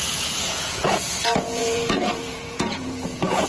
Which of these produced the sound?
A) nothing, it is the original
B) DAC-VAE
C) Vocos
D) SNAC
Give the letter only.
C